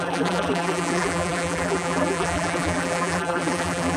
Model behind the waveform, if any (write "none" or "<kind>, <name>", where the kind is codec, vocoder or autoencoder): vocoder, BigVGAN v2